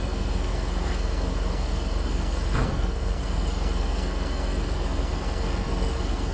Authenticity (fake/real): fake